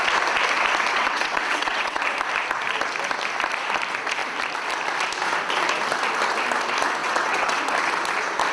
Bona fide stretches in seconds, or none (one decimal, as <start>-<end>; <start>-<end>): 0.0-0.9; 2.0-7.0; 7.6-8.5